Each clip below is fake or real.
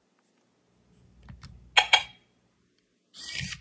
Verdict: real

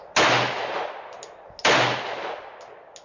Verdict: real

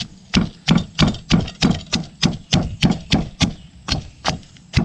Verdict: real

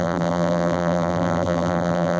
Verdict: fake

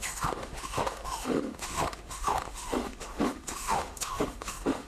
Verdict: fake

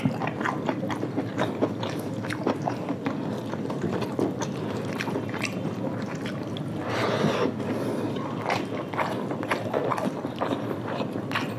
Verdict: real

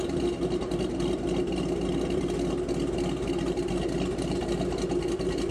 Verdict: real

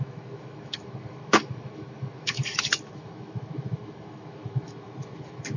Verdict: fake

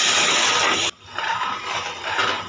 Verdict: real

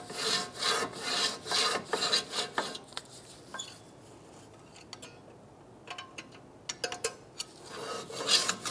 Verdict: real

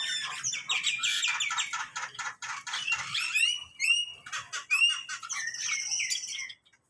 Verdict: real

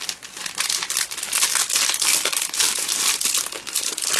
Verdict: real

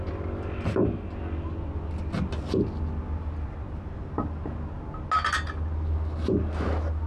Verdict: real